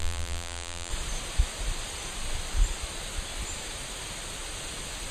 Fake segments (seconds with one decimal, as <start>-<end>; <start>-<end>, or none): 0.0-0.9